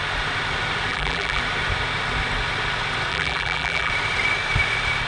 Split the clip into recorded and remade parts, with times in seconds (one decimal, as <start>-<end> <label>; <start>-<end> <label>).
0.0-0.9 recorded; 0.9-1.4 remade; 1.4-3.1 recorded; 3.1-3.9 remade; 3.9-5.1 recorded